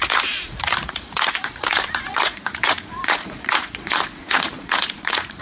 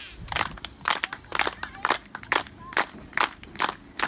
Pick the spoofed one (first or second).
first